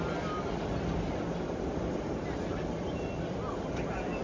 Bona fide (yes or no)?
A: yes